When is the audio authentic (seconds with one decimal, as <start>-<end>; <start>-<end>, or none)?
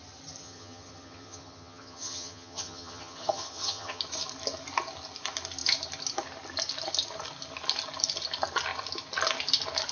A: 0.0-0.4; 4.0-9.9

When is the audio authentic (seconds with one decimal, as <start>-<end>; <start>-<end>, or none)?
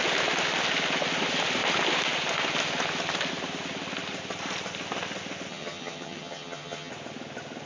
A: 0.0-5.5; 6.9-7.7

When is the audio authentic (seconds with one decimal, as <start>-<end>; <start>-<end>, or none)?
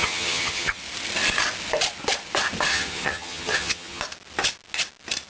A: 0.8-2.7; 4.0-5.3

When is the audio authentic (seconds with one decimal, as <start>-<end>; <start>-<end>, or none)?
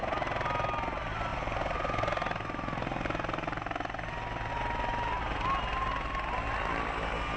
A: 0.0-7.4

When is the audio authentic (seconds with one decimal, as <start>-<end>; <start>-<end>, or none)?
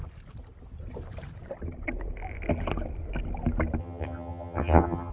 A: 0.0-3.8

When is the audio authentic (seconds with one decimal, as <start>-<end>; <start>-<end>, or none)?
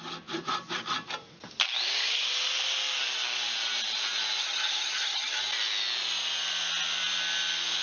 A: 0.0-4.4; 5.4-7.8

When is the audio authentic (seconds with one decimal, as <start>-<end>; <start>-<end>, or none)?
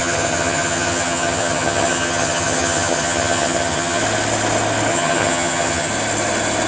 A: 4.0-4.9; 5.9-6.7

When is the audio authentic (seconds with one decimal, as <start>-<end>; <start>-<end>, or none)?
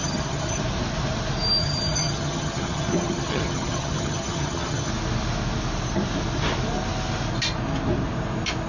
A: 0.6-1.6; 4.9-8.7